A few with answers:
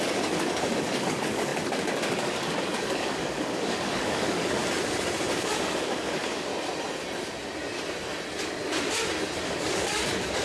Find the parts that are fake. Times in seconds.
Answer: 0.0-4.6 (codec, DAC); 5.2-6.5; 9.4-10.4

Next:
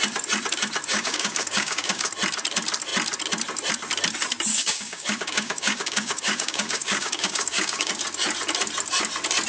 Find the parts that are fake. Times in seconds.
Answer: 0.9-2.1 (codec, DAC); 4.5-7.9

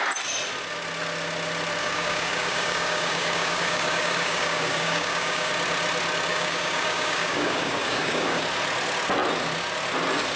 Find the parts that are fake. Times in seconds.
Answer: 1.8-5.5 (codec, DAC); 6.3-8.4

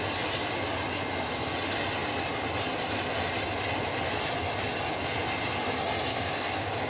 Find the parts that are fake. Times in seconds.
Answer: 6.1-6.9 (codec, DAC)

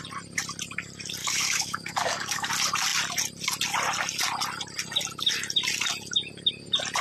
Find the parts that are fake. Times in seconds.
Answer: 1.2-2.5 (codec, DAC)

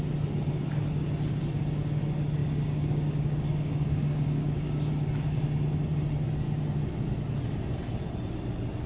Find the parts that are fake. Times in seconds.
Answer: 2.4-4.9 (codec, DAC)